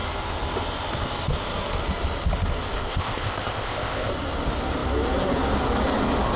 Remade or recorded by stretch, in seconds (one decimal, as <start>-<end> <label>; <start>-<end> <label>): 0.0-2.9 recorded; 2.9-4.1 remade; 4.1-6.4 recorded